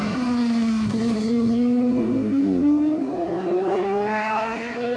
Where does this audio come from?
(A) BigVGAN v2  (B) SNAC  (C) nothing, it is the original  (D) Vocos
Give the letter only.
B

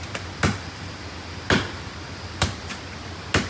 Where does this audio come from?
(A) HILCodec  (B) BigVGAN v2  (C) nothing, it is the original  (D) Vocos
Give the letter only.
C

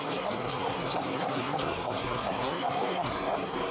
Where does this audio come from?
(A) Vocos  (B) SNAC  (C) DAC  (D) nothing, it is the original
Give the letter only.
B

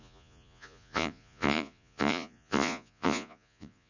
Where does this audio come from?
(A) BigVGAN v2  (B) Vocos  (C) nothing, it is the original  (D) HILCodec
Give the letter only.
B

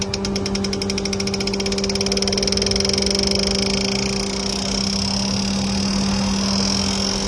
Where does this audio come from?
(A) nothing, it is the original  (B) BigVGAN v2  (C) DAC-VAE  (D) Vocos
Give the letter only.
A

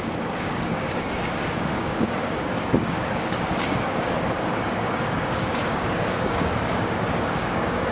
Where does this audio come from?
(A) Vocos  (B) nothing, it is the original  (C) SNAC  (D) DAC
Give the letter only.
D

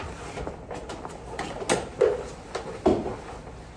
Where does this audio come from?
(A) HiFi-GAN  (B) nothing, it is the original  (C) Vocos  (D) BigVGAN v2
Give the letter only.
B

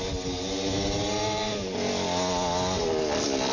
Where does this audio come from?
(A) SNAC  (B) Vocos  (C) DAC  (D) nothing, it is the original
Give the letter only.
D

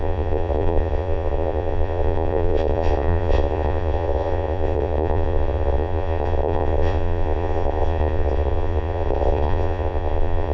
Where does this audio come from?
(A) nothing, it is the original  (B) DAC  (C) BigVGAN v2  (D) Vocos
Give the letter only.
D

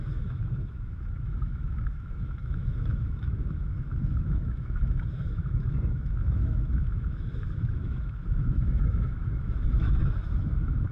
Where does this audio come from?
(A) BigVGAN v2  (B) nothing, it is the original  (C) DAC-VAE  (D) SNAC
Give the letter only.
C